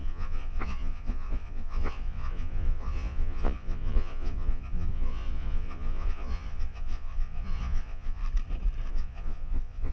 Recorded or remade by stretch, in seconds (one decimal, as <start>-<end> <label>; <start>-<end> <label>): 0.0-8.2 remade; 8.2-8.9 recorded; 8.9-9.9 remade